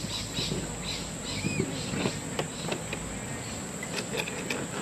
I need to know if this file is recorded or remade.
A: recorded